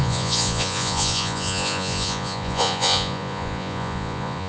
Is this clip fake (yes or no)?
yes